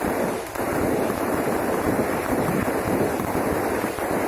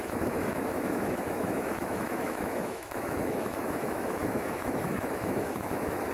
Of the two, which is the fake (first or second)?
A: second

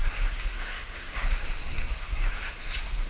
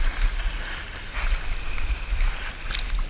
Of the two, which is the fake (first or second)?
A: first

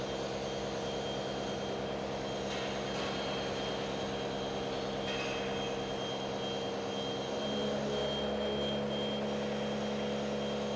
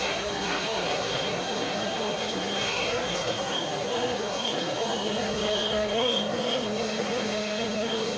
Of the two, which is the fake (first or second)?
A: second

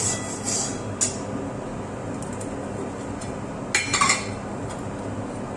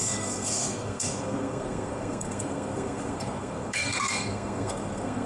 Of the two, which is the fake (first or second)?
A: second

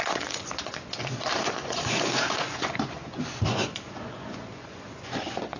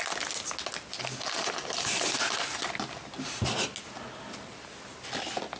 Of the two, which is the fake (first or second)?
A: first